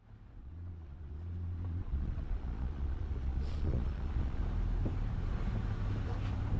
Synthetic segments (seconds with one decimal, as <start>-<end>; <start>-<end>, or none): 0.4-4.4